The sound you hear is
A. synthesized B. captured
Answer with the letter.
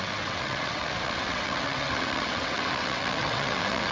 A